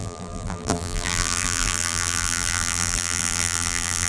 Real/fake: fake